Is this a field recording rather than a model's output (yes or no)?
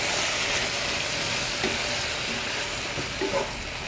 yes